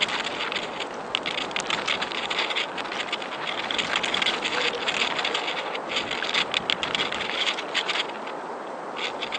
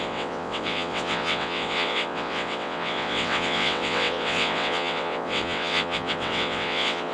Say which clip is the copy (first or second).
second